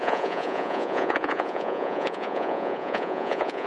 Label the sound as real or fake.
fake